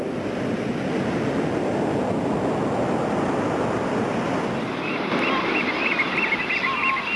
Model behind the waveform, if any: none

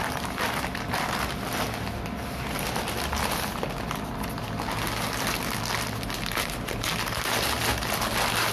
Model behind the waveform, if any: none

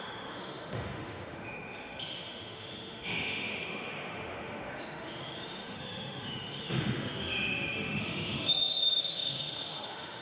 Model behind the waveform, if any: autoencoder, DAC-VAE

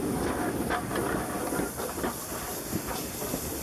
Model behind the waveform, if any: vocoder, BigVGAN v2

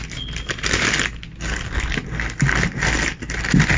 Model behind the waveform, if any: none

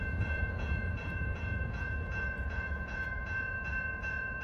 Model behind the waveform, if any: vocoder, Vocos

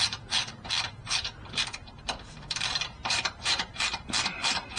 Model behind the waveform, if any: vocoder, BigVGAN v2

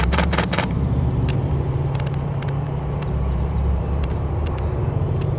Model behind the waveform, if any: vocoder, BigVGAN v2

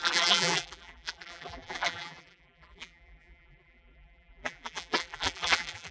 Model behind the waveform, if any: vocoder, BigVGAN v2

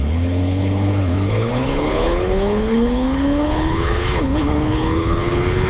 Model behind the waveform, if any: codec, HILCodec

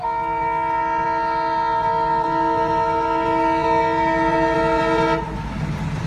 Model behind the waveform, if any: none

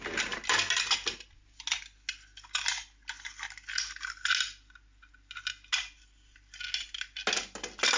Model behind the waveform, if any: none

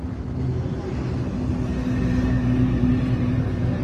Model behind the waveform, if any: none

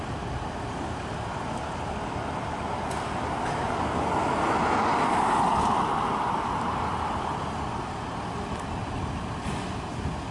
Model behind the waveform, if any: none